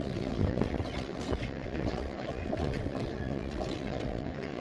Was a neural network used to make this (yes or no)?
yes